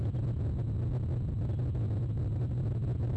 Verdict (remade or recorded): recorded